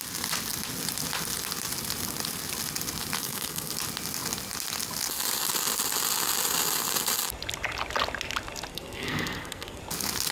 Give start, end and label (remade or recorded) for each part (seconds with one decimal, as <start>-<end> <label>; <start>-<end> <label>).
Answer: 0.0-3.2 recorded; 3.2-3.8 remade; 3.8-8.7 recorded; 8.7-9.8 remade; 9.8-10.3 recorded